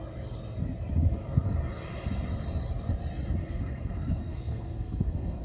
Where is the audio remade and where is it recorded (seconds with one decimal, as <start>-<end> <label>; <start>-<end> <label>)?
0.0-3.4 recorded; 3.4-5.4 remade